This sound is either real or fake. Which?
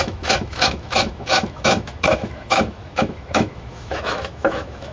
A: fake